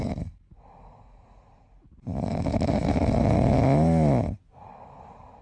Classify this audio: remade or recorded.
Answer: recorded